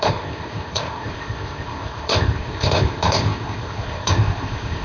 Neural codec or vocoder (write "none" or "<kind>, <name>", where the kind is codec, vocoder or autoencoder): codec, ZipCodec